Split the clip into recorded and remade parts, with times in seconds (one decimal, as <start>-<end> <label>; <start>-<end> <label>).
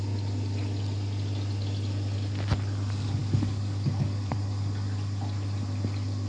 0.0-3.2 recorded; 3.2-4.3 remade; 4.3-6.3 recorded